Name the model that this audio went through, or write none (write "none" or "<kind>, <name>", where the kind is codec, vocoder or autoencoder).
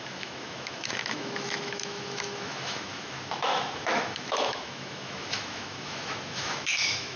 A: autoencoder, DAC-VAE